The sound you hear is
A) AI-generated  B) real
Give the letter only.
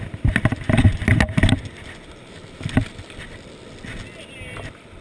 B